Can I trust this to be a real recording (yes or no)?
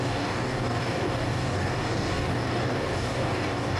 no